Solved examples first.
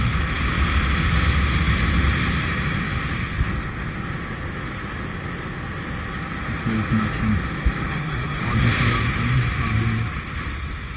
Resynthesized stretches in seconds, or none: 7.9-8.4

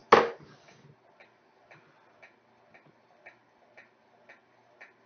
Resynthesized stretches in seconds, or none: none

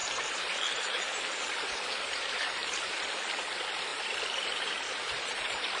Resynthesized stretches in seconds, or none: 0.0-2.9; 3.9-5.8

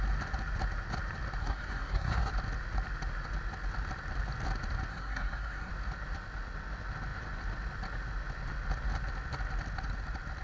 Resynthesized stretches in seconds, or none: 1.4-2.3; 4.9-5.7

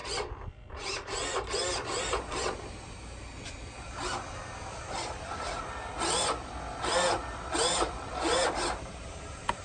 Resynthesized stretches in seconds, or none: 5.2-5.9; 7.9-9.6